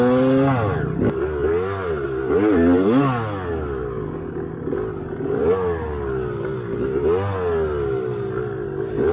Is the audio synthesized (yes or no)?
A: no